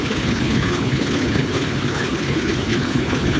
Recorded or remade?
remade